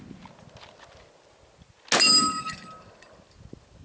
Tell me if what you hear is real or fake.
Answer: real